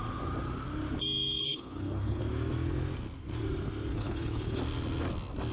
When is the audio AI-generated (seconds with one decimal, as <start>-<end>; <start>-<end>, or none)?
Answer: 1.4-2.2; 3.9-4.6